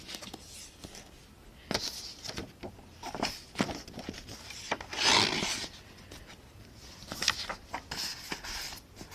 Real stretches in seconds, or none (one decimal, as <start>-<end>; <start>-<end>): 0.0-9.1